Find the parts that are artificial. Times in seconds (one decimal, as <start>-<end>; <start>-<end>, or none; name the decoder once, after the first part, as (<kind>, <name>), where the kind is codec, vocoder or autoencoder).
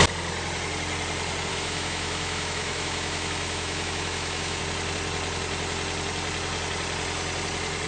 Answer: 1.5-4.6 (autoencoder, DAC-VAE)